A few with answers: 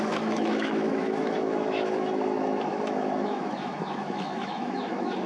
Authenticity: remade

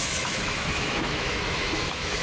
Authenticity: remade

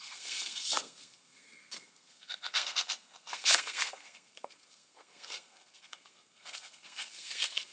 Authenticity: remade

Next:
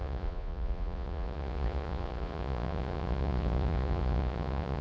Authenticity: remade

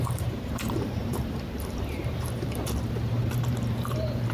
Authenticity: remade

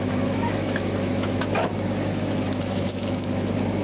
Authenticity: remade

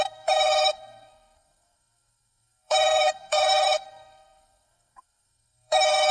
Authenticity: remade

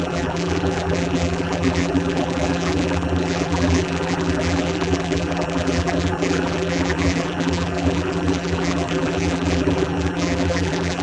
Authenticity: remade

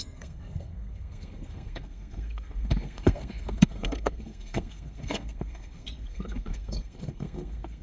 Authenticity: remade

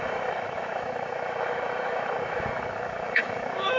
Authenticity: remade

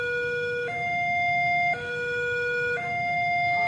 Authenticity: remade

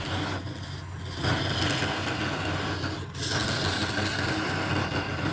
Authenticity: recorded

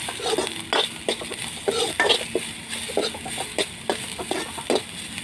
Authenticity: recorded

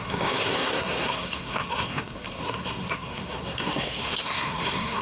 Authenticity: remade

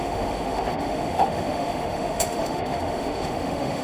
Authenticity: remade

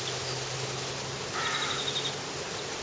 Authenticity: recorded